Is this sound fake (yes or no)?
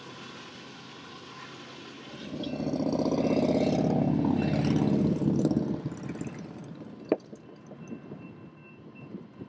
no